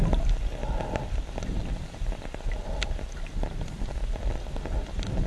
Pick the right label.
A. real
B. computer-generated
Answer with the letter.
A